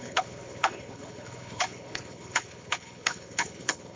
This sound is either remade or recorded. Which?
remade